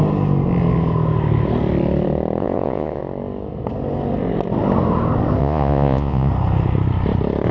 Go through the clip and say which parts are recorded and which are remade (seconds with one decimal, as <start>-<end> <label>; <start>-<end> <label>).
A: 0.0-2.4 recorded; 2.4-3.0 remade; 3.0-5.4 recorded; 5.4-6.3 remade; 6.3-7.5 recorded